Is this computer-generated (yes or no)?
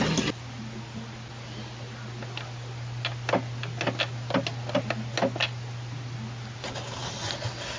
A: no